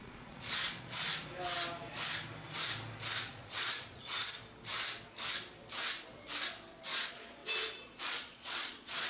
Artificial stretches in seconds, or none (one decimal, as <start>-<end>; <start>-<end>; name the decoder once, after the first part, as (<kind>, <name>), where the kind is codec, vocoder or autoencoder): 0.0-1.1 (vocoder, Vocos); 3.3-4.2; 6.8-7.4; 8.0-9.1